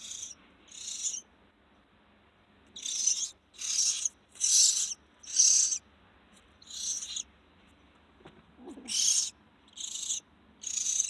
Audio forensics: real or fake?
real